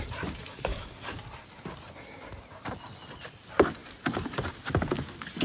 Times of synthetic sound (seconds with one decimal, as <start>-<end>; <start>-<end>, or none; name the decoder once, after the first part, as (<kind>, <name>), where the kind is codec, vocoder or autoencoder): 0.5-1.2 (codec, DAC)